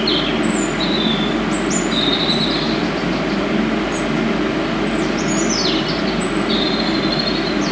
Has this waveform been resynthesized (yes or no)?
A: no